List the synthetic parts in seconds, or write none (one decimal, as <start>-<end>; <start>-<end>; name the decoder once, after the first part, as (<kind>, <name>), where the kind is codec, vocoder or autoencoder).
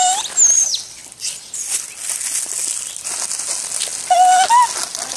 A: none